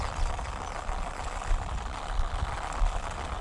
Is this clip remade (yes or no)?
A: no